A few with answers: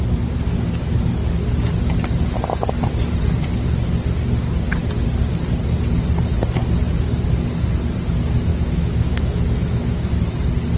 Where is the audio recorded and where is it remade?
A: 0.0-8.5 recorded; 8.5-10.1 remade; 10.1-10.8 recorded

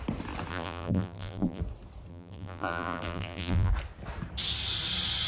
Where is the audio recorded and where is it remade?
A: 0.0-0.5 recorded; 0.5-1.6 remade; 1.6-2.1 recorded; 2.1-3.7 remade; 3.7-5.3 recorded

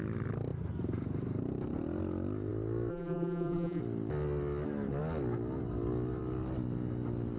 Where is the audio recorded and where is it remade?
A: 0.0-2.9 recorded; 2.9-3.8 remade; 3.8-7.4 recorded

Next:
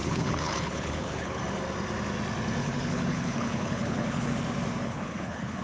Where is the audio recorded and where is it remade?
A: 0.0-1.4 remade; 1.4-2.6 recorded; 2.6-4.3 remade; 4.3-4.8 recorded; 4.8-5.6 remade

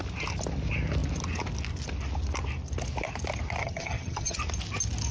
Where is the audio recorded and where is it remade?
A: 0.0-3.6 recorded; 3.6-4.4 remade; 4.4-5.1 recorded